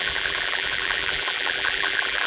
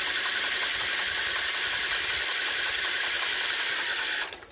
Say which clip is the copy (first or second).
first